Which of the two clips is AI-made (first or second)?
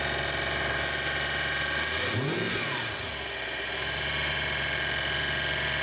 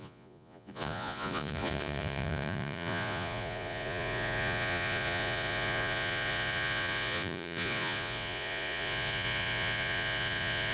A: second